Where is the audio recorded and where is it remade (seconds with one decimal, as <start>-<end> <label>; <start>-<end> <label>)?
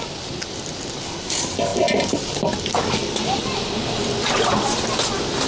0.0-5.5 recorded